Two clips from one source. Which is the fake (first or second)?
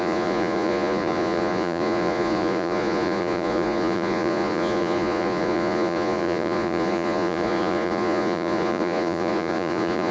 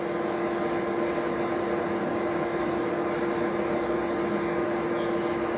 first